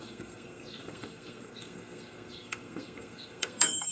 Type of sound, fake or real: fake